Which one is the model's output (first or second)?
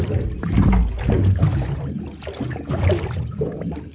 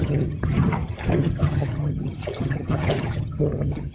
second